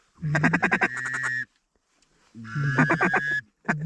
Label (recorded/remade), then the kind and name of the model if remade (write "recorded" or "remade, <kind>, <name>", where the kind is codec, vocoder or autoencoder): recorded